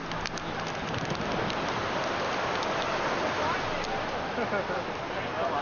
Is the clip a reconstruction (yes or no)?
no